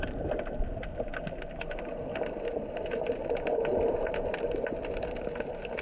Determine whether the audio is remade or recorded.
recorded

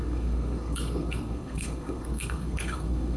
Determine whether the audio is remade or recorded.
remade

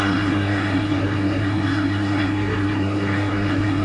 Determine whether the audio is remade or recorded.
remade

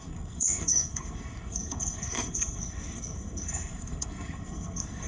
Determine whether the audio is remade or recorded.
remade